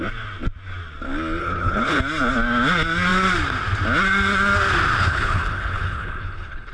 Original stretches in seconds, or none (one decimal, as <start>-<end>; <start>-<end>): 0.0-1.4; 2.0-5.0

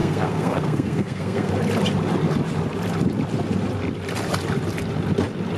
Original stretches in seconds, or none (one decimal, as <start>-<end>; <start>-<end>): 1.5-5.6

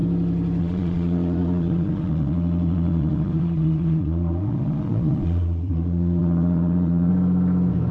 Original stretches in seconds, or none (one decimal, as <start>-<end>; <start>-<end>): 0.0-0.6; 7.1-7.9

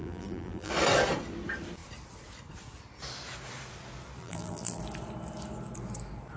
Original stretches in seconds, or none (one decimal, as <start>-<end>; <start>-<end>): 0.7-4.2; 4.8-6.4

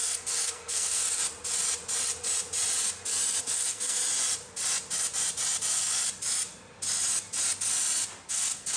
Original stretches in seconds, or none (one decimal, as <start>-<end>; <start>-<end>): 1.2-3.4; 4.0-8.3

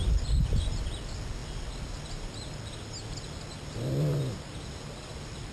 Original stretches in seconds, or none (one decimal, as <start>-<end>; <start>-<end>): 0.0-5.5

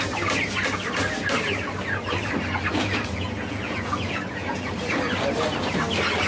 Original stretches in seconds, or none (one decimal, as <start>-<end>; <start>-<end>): 0.0-2.8; 4.7-6.3

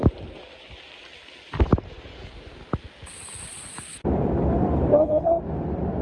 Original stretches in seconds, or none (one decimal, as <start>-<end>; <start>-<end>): 0.0-4.9; 5.4-6.0